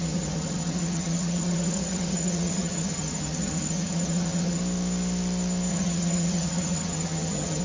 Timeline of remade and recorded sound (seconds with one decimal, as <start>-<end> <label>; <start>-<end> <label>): 0.0-4.6 remade; 4.6-5.7 recorded; 5.7-7.6 remade